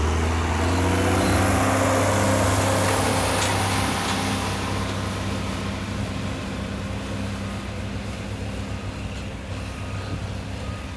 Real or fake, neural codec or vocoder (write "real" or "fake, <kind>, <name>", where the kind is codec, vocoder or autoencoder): real